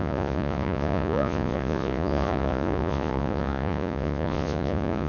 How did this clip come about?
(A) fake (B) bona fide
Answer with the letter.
A